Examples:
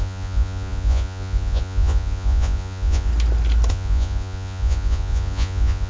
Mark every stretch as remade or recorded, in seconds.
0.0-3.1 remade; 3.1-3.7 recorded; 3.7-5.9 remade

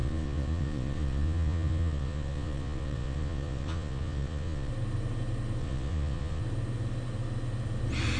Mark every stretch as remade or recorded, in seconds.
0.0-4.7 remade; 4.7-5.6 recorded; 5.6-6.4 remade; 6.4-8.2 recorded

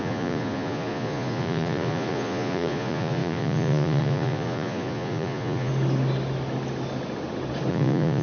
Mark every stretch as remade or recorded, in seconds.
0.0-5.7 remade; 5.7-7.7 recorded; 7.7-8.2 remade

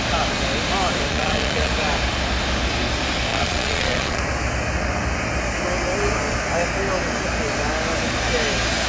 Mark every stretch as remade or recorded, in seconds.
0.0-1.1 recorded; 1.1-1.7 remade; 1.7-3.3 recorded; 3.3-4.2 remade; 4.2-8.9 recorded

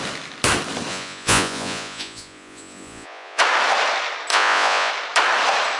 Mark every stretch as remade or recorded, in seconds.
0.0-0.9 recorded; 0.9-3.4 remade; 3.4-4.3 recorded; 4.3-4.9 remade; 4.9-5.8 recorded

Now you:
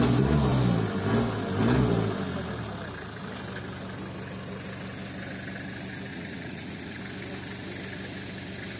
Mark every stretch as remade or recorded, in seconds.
0.0-6.1 recorded; 6.1-7.0 remade; 7.0-8.8 recorded

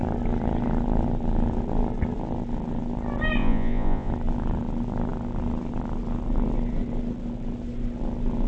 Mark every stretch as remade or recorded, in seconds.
0.0-3.4 recorded; 3.4-4.1 remade; 4.1-8.5 recorded

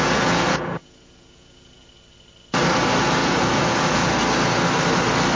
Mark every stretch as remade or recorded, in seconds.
0.0-1.9 remade; 1.9-3.2 recorded; 3.2-4.1 remade; 4.1-5.3 recorded